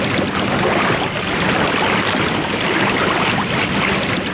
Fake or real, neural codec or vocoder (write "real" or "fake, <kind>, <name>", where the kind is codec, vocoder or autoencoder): real